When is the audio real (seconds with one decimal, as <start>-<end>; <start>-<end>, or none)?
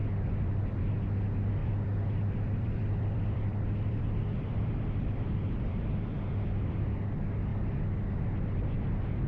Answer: 0.8-1.6; 5.9-9.3